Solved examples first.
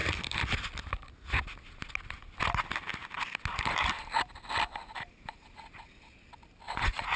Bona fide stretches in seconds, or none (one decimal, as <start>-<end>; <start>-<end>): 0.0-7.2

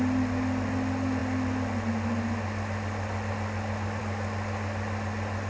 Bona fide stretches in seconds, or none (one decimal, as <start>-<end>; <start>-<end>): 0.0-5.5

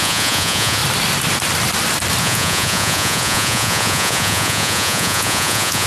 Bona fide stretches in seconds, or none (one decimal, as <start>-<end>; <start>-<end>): 0.8-2.2